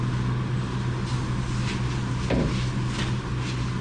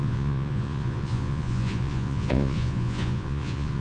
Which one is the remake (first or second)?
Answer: second